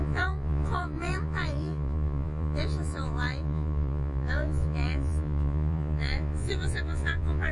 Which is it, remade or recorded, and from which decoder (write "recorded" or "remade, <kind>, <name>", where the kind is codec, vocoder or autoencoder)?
remade, vocoder, Vocos